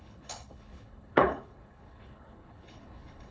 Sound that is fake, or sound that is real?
fake